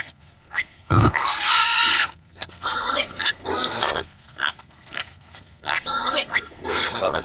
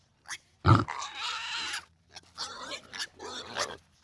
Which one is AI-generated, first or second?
first